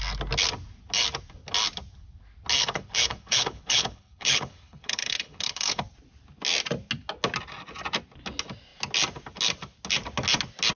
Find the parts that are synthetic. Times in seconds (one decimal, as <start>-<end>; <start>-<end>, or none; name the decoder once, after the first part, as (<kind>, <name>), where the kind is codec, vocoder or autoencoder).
2.6-5.8 (codec, HILCodec)